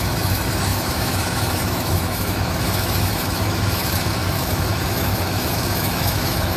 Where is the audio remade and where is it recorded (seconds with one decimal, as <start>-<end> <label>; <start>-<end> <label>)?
0.0-6.6 remade